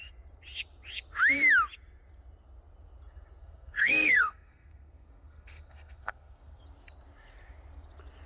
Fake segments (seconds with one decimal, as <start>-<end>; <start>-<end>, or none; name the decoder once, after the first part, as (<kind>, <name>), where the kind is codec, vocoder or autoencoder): 3.4-6.6 (codec, SNAC)